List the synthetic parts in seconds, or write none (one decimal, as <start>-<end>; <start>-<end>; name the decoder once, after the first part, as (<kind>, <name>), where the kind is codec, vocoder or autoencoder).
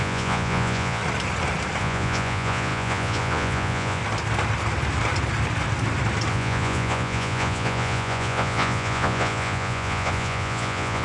0.0-1.0 (vocoder, Vocos); 1.8-4.0; 6.3-11.0